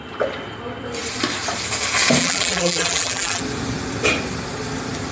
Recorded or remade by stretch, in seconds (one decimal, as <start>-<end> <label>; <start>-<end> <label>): 0.0-2.2 recorded; 2.2-3.4 remade; 3.4-5.1 recorded